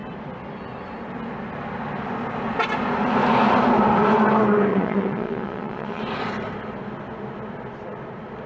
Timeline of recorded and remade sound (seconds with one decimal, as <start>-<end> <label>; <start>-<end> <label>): 0.0-4.7 recorded; 4.7-6.0 remade; 6.0-8.5 recorded